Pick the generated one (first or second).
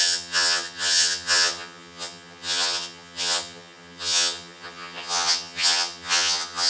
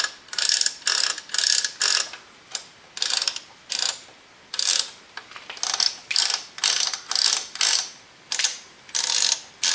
first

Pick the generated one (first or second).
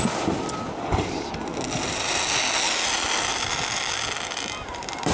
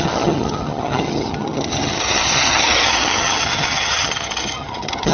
second